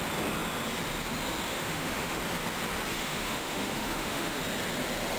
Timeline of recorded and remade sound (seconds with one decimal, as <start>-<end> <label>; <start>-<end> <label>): 0.0-1.5 recorded; 1.5-2.2 remade; 2.2-2.9 recorded; 2.9-4.4 remade; 4.4-5.2 recorded